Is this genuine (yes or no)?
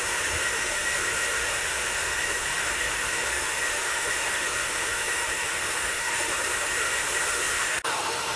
no